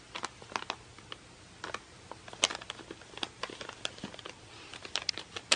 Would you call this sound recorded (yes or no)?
yes